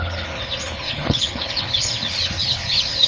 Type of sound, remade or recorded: remade